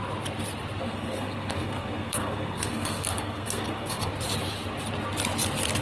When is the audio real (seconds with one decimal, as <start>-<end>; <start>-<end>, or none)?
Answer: 0.0-0.8; 4.1-5.8